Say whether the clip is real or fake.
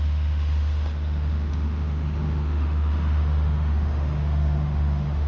fake